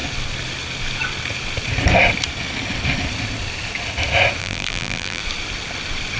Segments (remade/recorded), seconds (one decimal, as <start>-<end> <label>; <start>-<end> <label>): 0.0-4.4 recorded; 4.4-5.2 remade; 5.2-6.2 recorded